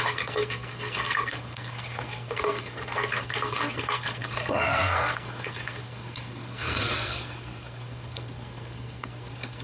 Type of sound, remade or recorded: remade